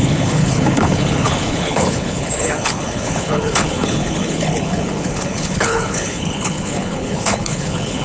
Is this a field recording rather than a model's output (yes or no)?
no